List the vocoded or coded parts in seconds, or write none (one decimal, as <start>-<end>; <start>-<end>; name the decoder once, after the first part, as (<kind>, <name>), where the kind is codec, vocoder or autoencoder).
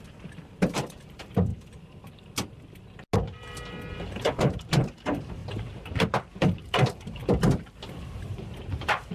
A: 0.0-1.5 (vocoder, BigVGAN v2); 3.9-7.2; 8.0-9.1